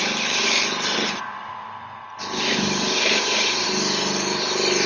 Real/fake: fake